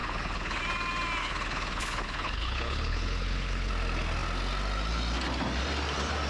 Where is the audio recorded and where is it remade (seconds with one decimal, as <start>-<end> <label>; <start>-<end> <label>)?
0.0-0.6 remade; 0.6-1.2 recorded; 1.2-3.7 remade; 3.7-6.3 recorded